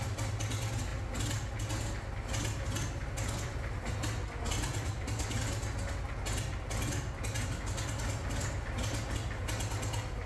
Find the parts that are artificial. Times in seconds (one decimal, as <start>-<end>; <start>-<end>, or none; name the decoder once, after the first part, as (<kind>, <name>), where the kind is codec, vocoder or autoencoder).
none